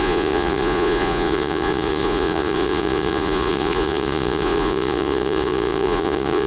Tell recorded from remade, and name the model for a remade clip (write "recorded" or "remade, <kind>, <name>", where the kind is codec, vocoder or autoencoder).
remade, vocoder, Vocos